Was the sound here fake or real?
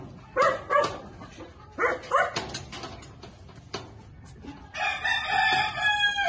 real